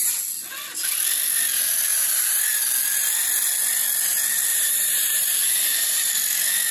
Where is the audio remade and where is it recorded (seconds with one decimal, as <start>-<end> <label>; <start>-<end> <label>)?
0.0-1.9 recorded; 1.9-2.4 remade; 2.4-4.5 recorded; 4.5-6.1 remade; 6.1-6.7 recorded